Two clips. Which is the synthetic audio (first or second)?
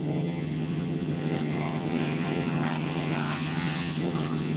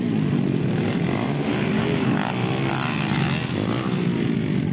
first